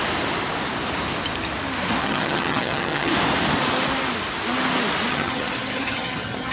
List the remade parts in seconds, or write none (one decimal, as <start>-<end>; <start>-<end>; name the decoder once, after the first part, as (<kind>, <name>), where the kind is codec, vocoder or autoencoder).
2.0-3.1 (vocoder, HiFi-GAN); 5.1-6.5